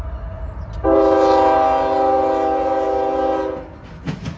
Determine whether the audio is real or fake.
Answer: real